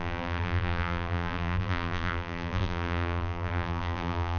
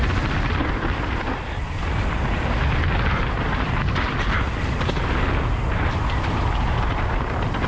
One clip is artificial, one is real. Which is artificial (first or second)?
first